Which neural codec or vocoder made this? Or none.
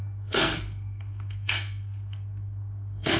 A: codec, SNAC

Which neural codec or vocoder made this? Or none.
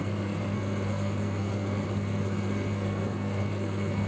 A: codec, SNAC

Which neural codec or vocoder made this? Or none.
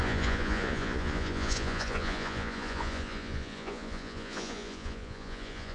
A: vocoder, Vocos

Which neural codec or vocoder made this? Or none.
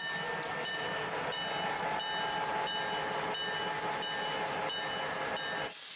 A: none